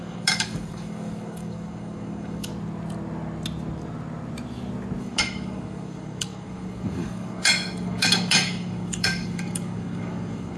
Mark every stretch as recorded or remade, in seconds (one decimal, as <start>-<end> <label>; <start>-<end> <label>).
0.0-2.5 remade; 2.5-5.0 recorded; 5.0-10.6 remade

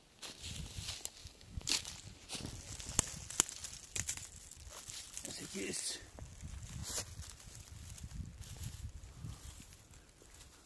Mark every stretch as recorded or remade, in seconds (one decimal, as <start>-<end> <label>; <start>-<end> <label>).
0.0-1.2 recorded; 1.2-1.9 remade; 1.9-10.7 recorded

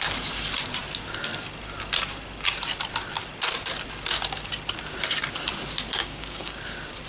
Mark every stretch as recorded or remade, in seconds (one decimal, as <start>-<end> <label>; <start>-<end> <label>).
0.0-6.0 recorded; 6.0-6.6 remade; 6.6-7.1 recorded

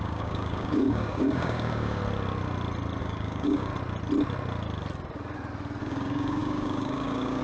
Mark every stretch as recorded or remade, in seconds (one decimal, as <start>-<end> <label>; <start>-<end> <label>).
0.0-2.0 remade; 2.0-3.0 recorded; 3.0-3.7 remade; 3.7-5.8 recorded; 5.8-7.4 remade

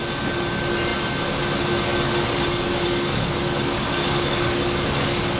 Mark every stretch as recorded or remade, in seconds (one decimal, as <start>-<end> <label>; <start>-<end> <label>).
0.0-1.9 recorded; 1.9-5.4 remade

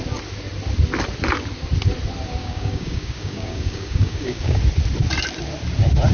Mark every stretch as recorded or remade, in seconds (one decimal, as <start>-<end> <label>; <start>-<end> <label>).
0.0-2.4 recorded; 2.4-4.6 remade; 4.6-6.1 recorded